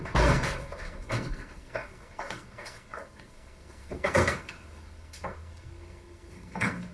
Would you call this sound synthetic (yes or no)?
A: yes